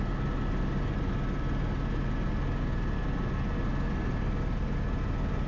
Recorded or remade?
recorded